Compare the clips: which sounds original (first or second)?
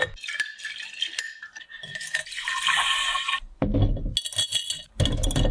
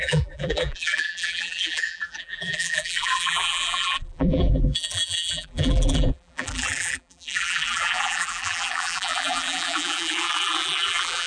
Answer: first